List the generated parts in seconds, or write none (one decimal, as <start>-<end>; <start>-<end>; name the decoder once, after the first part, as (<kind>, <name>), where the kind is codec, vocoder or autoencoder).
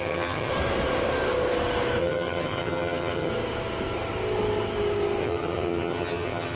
0.0-0.5 (vocoder, HiFi-GAN); 2.0-3.3; 5.2-6.6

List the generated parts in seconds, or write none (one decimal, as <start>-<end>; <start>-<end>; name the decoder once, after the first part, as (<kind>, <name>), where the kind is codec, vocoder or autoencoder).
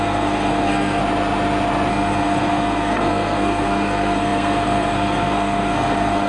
0.0-1.0 (codec, SNAC); 1.9-6.3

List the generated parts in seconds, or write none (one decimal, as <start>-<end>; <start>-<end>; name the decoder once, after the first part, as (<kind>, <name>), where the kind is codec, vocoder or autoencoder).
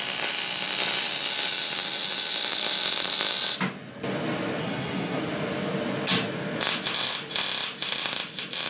4.6-5.2 (codec, SNAC)